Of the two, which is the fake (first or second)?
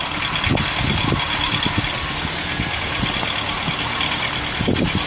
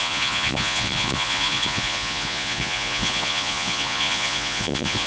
second